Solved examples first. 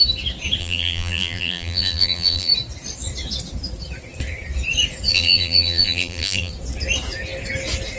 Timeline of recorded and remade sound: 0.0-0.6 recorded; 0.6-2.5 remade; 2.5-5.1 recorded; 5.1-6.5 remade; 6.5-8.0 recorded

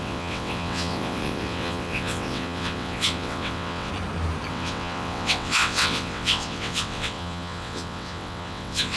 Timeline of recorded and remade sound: 0.0-3.9 remade; 3.9-4.5 recorded; 4.5-9.0 remade

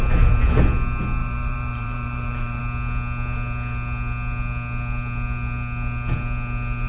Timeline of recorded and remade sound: 0.0-1.2 recorded; 1.2-2.6 remade; 2.6-6.9 recorded

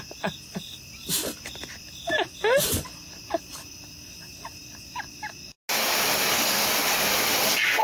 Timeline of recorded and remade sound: 0.0-7.8 recorded

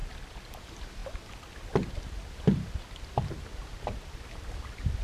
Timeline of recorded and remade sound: 0.0-0.6 recorded; 0.6-1.0 remade; 1.0-3.1 recorded; 3.1-5.0 remade

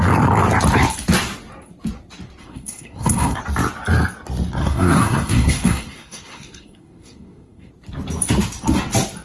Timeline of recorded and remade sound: 0.0-2.4 recorded; 2.4-3.4 remade; 3.4-4.6 recorded; 4.6-7.7 remade; 7.7-9.2 recorded